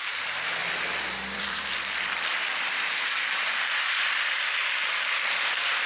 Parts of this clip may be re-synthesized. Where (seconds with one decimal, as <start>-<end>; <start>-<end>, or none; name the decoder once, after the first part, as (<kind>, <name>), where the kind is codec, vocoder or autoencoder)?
0.0-5.9 (vocoder, BigVGAN v2)